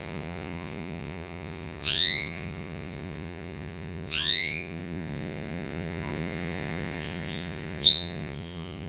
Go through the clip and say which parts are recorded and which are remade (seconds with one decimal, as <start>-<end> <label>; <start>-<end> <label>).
0.0-8.9 remade